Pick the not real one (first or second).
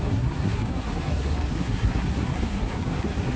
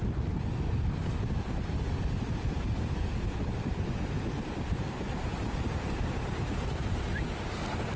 first